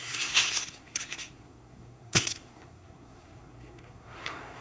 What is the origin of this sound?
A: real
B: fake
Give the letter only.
B